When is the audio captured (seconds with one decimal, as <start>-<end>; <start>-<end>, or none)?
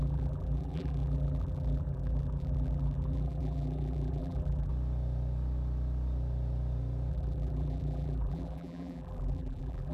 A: 4.7-7.1